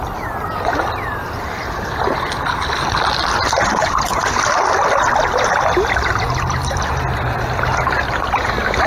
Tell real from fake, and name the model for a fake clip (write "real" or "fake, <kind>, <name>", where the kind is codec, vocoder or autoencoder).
fake, vocoder, BigVGAN v2